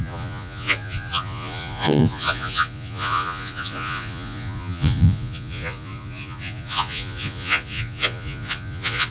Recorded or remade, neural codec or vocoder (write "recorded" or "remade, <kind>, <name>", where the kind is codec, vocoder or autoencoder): remade, vocoder, Vocos